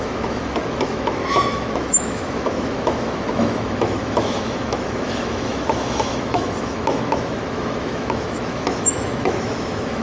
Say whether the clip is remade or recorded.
remade